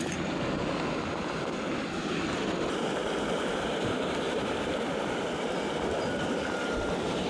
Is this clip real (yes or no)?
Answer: yes